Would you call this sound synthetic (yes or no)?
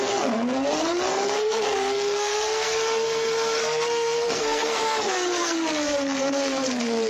yes